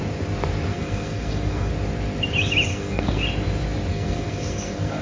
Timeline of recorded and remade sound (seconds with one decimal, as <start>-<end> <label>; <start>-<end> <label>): 0.0-0.7 recorded; 0.7-1.7 remade; 1.7-2.7 recorded; 2.7-3.2 remade; 3.2-3.9 recorded; 3.9-5.0 remade